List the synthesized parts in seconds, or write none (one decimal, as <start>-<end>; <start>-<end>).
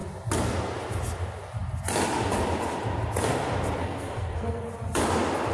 3.8-4.6